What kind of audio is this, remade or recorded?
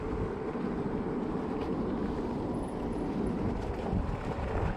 recorded